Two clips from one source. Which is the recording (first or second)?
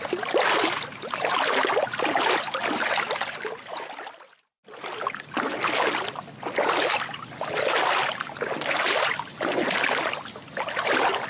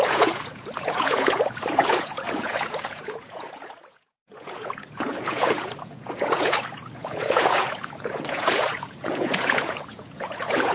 first